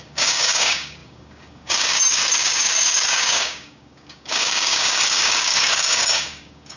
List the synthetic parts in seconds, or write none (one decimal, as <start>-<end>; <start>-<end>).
0.0-6.8